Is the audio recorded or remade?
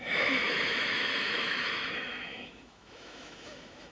remade